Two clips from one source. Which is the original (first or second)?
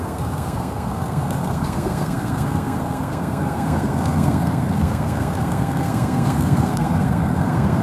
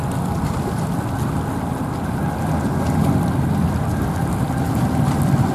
second